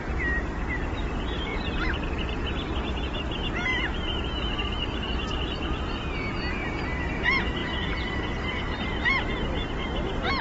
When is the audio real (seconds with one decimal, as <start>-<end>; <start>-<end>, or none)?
0.0-1.5; 2.9-7.6; 9.7-10.4